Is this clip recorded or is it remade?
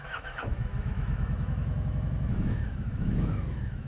remade